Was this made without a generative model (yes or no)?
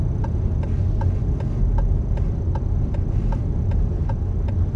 yes